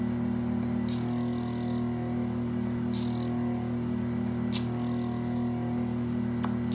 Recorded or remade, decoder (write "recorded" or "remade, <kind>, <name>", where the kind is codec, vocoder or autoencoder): recorded